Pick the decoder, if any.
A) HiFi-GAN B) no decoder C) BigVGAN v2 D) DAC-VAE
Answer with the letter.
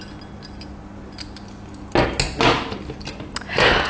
B